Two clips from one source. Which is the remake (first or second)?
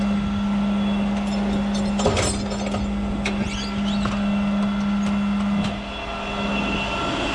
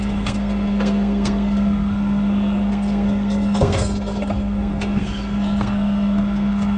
second